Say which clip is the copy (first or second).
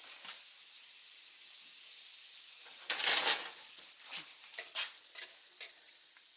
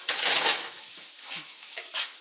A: second